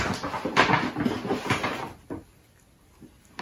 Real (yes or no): yes